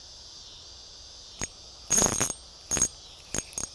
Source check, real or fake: real